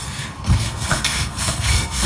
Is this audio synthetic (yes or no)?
yes